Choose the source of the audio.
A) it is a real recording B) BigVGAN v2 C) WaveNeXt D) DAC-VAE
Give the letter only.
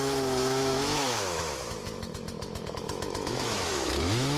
D